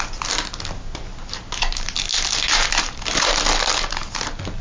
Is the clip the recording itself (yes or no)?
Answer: yes